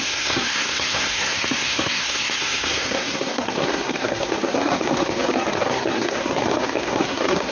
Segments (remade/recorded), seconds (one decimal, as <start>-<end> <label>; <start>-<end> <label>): 0.0-7.5 remade